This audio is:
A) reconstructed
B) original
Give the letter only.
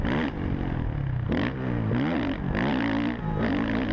B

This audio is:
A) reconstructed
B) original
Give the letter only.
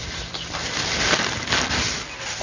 B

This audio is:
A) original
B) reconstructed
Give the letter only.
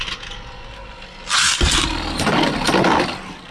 A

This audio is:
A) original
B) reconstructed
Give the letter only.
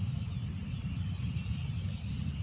A